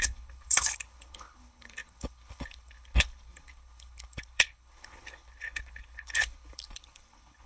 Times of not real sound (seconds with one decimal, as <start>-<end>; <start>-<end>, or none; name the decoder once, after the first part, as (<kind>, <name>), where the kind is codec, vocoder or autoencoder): 0.0-7.5 (codec, HILCodec)